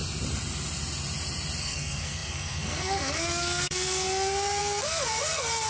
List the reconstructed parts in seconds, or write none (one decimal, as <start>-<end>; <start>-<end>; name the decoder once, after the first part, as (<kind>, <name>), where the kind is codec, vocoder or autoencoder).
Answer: 1.6-5.7 (codec, SNAC)